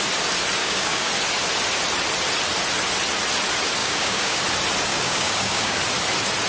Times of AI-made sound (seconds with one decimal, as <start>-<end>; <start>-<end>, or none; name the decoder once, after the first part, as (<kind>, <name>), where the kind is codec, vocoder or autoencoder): 0.6-1.1 (codec, DAC); 3.8-4.4; 4.9-5.8